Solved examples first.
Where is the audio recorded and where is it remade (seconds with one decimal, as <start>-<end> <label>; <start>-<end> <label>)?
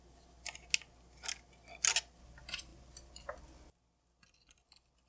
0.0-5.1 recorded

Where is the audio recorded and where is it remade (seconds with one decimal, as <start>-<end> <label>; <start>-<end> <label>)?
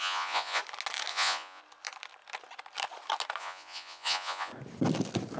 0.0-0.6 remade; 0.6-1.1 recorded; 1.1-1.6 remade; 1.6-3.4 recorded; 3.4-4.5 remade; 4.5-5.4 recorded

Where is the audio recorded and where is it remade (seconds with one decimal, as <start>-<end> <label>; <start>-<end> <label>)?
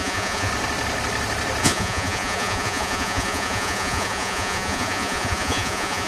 0.0-0.5 remade; 0.5-1.6 recorded; 1.6-6.1 remade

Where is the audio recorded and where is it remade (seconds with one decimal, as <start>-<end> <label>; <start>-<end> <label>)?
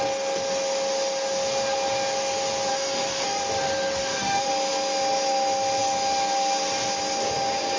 0.0-2.7 recorded; 2.7-3.4 remade; 3.4-4.0 recorded; 4.0-4.5 remade; 4.5-7.8 recorded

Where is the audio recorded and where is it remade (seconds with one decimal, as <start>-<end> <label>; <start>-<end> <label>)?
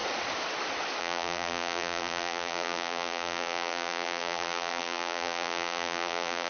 0.0-1.0 recorded; 1.0-6.5 remade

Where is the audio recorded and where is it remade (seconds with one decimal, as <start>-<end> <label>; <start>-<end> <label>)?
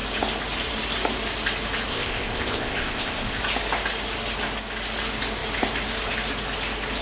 0.0-1.9 recorded; 1.9-3.4 remade; 3.4-7.0 recorded